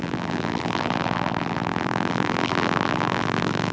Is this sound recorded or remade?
remade